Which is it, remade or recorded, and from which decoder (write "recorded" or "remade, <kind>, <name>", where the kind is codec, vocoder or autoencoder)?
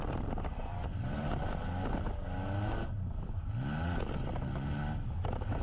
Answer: recorded